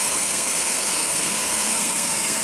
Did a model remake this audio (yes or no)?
yes